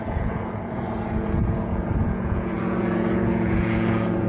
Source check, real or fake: fake